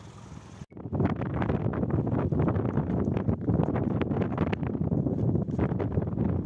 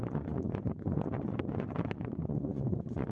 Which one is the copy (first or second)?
second